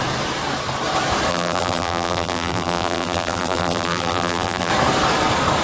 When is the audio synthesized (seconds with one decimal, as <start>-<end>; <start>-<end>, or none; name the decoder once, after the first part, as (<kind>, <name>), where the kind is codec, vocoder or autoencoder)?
1.3-4.7 (vocoder, BigVGAN v2)